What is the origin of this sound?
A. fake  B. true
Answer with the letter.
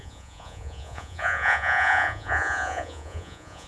A